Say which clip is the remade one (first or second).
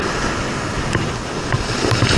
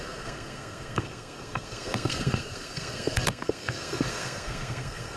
second